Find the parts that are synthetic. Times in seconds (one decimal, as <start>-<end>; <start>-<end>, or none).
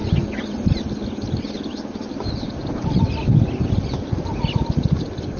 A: none